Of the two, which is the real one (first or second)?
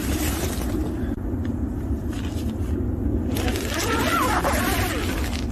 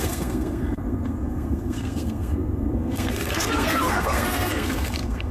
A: first